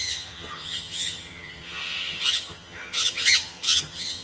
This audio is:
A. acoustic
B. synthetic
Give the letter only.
B